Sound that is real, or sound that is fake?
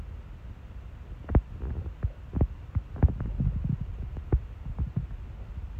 real